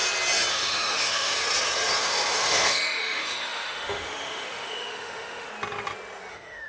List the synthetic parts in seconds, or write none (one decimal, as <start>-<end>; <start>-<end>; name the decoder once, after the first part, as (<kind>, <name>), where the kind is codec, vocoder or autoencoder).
0.5-1.3 (autoencoder, DAC-VAE); 2.0-5.5; 6.3-6.7

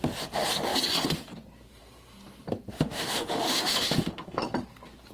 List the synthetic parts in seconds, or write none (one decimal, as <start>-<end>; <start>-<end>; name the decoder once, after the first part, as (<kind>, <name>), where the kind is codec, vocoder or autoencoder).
2.7-4.4 (autoencoder, DAC-VAE)

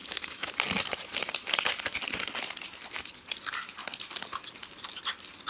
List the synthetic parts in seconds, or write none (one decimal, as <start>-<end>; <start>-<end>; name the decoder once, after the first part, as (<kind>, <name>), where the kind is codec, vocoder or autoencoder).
0.0-0.5 (autoencoder, DAC-VAE)